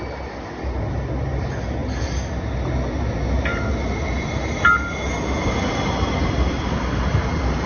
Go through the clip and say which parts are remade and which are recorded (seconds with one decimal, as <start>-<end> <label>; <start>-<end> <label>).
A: 0.0-7.7 recorded